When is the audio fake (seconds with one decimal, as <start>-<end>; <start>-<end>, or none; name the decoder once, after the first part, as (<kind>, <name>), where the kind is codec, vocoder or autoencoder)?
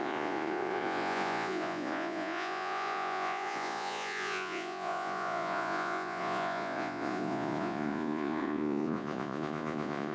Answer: 0.0-10.1 (vocoder, Vocos)